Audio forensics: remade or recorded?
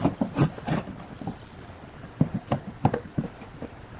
recorded